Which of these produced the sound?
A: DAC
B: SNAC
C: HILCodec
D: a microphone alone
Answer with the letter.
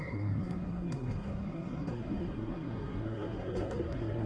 B